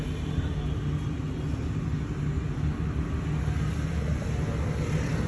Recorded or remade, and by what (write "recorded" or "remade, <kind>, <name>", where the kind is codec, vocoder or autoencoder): recorded